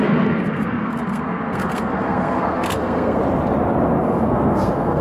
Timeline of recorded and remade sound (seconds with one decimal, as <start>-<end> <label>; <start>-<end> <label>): 0.0-3.2 remade; 3.2-4.0 recorded; 4.0-5.0 remade